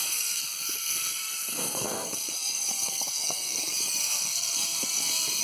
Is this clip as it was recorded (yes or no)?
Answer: no